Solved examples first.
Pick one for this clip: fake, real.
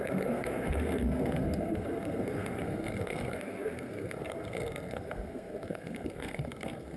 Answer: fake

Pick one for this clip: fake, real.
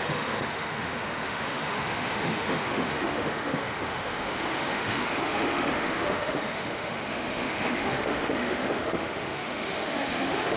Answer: fake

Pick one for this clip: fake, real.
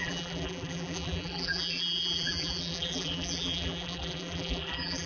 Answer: fake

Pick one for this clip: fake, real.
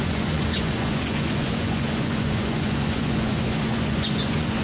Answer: fake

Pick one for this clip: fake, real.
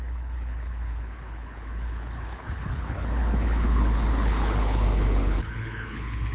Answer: fake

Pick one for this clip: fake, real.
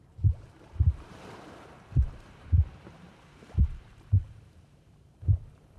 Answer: fake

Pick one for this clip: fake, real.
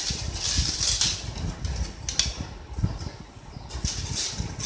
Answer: real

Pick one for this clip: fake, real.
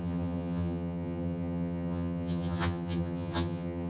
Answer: fake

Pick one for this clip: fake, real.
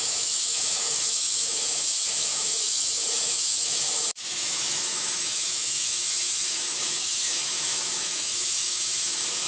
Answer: fake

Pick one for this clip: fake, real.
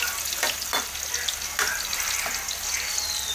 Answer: real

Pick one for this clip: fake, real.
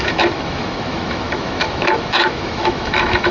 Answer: fake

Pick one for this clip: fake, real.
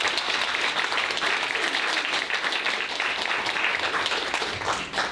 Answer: real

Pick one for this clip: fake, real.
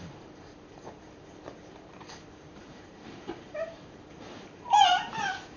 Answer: fake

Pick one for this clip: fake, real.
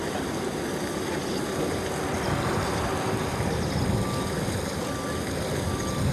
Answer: real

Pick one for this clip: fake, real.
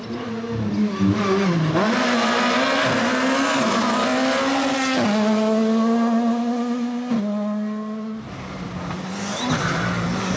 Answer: real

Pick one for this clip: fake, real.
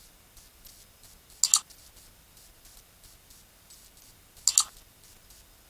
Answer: real